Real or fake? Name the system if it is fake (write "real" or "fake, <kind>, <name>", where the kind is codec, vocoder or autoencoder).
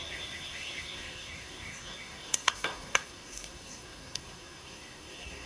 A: fake, codec, SNAC